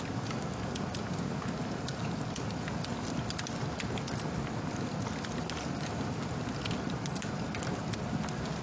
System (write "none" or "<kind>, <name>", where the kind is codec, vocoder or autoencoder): none